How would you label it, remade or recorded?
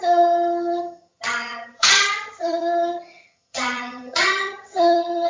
remade